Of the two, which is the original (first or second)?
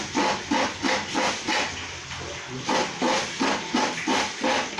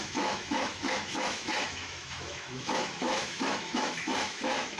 first